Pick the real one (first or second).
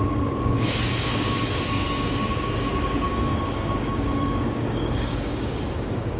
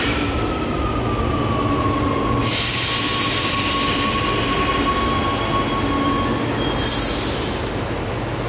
second